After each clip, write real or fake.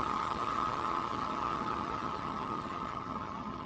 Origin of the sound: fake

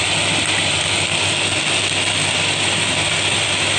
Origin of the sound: real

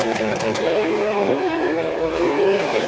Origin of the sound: fake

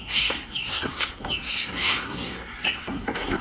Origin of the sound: fake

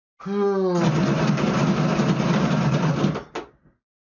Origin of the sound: real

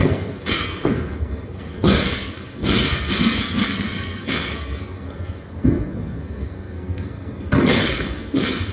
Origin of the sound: fake